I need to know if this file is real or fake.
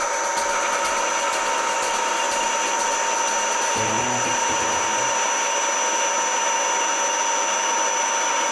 real